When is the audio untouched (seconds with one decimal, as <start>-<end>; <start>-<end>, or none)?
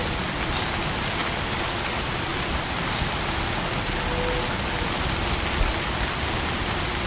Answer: 0.0-7.1